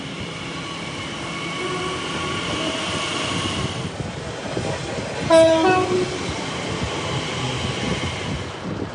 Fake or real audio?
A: real